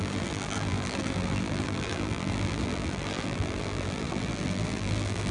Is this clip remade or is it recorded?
remade